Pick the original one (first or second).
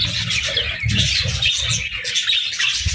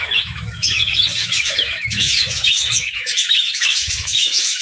first